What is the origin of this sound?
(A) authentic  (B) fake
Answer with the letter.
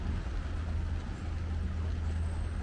A